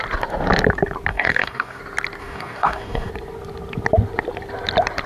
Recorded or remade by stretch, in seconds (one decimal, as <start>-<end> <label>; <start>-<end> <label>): 0.0-1.1 recorded; 1.1-1.8 remade; 1.8-2.2 recorded; 2.2-3.1 remade; 3.1-5.1 recorded

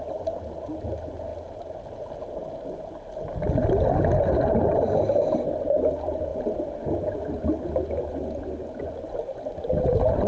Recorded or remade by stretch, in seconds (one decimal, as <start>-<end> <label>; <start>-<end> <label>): 0.0-10.3 recorded

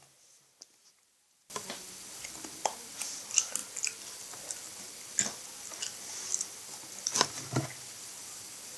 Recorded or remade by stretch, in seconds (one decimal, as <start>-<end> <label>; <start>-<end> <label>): 0.0-8.8 recorded

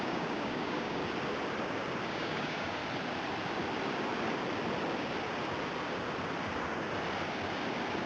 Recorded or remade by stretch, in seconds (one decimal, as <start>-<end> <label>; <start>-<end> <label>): 0.0-1.0 remade; 1.0-2.1 recorded; 2.1-2.8 remade; 2.8-8.1 recorded

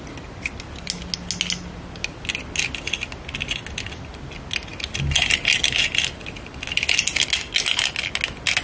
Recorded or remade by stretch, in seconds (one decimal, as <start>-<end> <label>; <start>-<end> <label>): 0.0-8.6 recorded

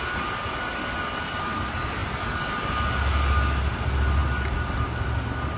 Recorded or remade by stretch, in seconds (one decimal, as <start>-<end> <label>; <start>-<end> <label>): 0.0-5.6 recorded